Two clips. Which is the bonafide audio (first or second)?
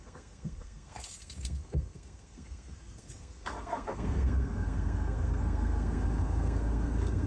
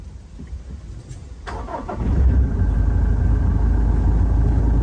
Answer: second